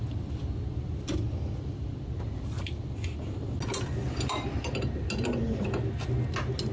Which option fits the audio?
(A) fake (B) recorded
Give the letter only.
B